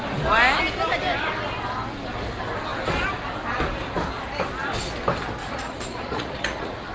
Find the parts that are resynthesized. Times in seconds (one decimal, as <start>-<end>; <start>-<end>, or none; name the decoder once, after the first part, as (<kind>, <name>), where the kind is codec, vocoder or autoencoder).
5.4-6.9 (vocoder, Vocos)